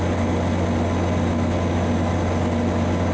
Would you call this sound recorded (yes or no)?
yes